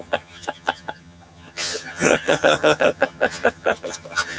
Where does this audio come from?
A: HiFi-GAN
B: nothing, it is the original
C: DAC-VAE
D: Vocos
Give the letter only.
A